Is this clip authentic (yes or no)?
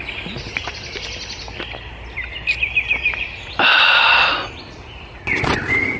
yes